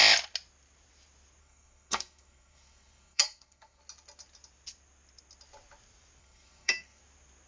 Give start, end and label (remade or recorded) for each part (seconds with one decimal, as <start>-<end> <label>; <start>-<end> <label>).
0.0-1.4 recorded; 1.4-3.8 remade; 3.8-6.2 recorded; 6.2-7.0 remade; 7.0-7.5 recorded